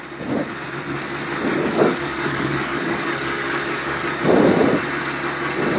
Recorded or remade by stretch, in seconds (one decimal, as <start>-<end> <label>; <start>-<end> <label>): 0.0-1.5 recorded; 1.5-4.0 remade; 4.0-5.8 recorded